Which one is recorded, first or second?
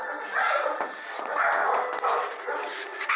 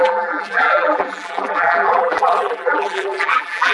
first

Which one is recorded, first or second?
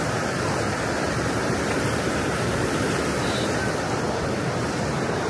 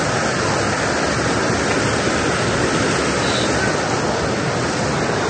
second